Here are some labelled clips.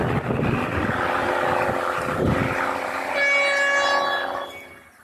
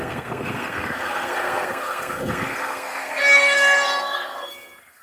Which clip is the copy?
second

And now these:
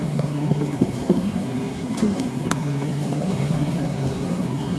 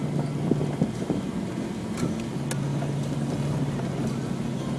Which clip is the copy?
first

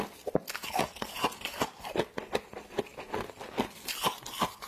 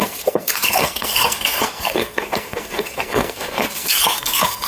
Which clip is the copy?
second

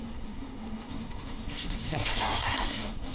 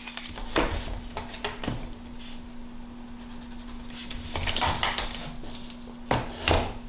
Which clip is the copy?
first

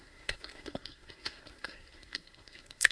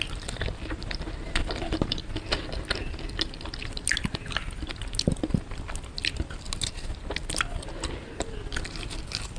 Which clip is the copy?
first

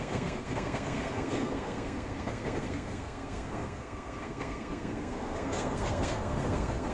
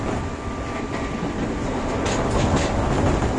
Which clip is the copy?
first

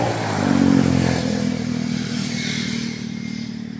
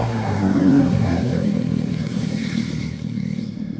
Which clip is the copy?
second